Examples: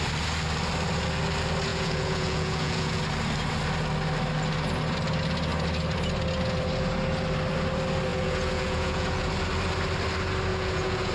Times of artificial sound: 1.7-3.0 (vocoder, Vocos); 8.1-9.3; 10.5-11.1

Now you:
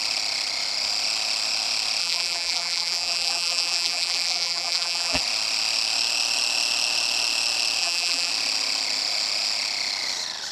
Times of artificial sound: 2.0-5.2 (vocoder, BigVGAN v2); 7.8-8.3